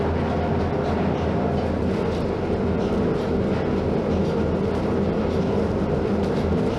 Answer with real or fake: real